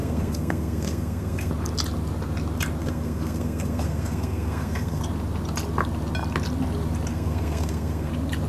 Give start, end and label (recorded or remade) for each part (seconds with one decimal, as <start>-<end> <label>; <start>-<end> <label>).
0.0-1.5 remade; 1.5-2.8 recorded; 2.8-5.0 remade; 5.0-7.1 recorded; 7.1-8.1 remade; 8.1-8.5 recorded